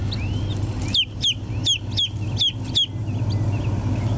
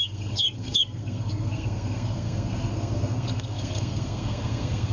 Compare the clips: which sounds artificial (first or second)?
second